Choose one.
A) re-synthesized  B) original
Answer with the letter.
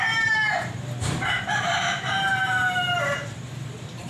A